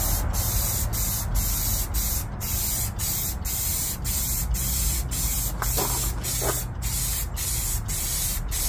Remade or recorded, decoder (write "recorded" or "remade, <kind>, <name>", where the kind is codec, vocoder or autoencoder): recorded